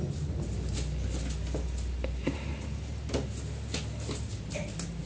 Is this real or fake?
real